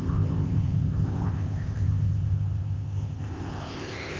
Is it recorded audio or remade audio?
remade